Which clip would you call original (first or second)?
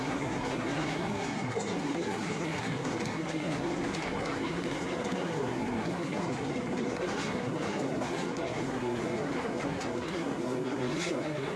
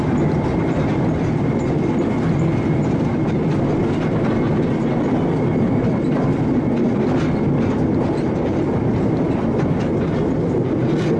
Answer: second